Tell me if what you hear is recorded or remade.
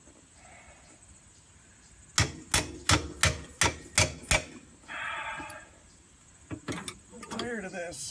recorded